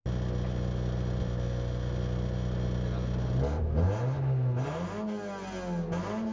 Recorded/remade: recorded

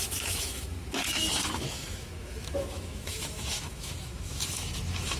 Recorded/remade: remade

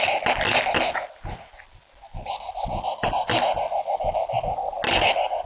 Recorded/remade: recorded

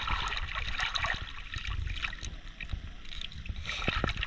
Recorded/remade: recorded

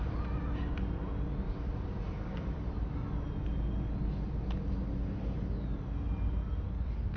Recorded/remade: recorded